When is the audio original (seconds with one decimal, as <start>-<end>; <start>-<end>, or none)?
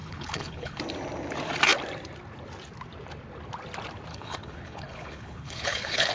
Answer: 0.8-4.1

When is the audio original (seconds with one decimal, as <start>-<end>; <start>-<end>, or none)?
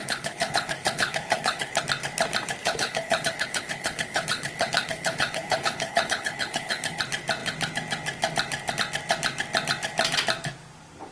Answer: 1.8-2.6; 7.0-11.1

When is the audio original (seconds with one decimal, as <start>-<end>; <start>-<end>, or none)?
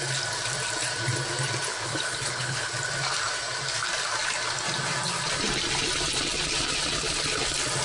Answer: 0.0-1.7; 2.7-7.8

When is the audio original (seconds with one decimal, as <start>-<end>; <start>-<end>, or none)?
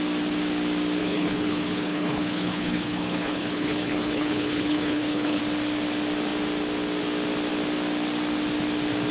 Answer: 0.0-1.0; 5.4-9.1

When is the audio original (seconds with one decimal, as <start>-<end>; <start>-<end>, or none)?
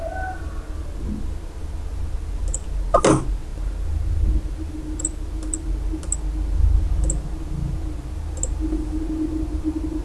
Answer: 0.0-10.0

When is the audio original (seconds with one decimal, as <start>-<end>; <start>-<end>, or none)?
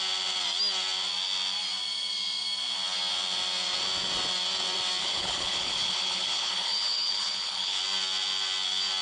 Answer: 0.0-5.0; 7.8-9.0